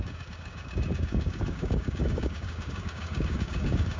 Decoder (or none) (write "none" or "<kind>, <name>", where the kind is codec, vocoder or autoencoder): codec, DAC